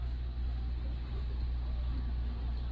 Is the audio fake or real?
real